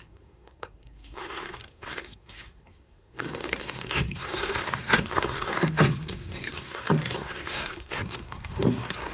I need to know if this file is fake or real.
fake